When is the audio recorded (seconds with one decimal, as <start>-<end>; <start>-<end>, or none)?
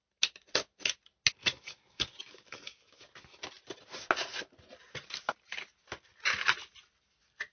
0.0-1.4; 3.1-7.5